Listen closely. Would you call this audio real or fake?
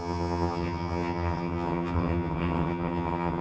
fake